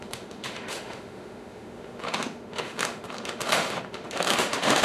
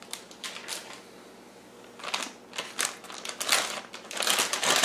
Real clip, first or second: second